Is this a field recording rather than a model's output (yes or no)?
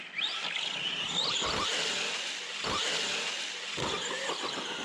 yes